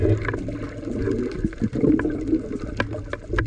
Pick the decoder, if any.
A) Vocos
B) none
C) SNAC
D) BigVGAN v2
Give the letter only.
B